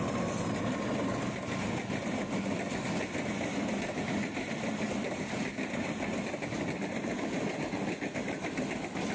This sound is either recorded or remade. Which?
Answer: recorded